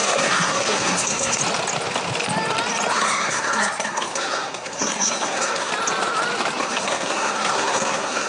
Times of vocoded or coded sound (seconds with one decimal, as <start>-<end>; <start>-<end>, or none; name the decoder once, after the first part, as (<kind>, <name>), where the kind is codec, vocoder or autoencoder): 0.0-1.4 (codec, SNAC); 2.9-5.7; 6.6-8.3